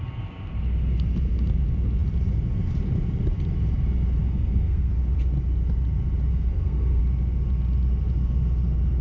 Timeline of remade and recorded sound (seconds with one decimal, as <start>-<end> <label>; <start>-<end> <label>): 0.0-4.2 recorded; 4.2-4.9 remade; 4.9-6.3 recorded; 6.3-7.0 remade; 7.0-9.0 recorded